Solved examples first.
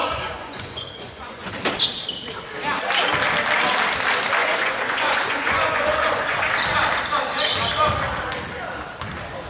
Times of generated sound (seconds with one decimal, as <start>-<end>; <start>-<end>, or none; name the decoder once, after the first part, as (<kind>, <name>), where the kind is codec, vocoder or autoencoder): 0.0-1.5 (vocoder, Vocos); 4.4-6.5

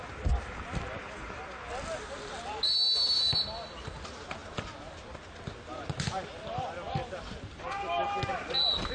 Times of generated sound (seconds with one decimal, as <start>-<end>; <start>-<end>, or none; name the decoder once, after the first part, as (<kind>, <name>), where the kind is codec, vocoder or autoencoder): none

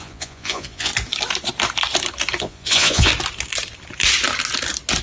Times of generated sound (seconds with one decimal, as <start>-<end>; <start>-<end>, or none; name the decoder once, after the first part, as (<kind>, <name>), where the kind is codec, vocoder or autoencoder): 0.0-0.9 (vocoder, Vocos); 2.4-3.1